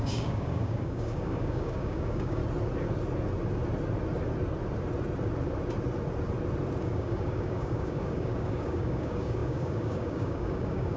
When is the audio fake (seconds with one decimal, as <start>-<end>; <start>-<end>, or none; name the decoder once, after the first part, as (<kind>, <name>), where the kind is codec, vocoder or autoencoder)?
0.0-2.4 (codec, DAC); 6.8-11.0